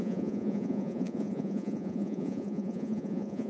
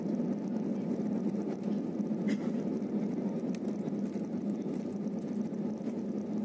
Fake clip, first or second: first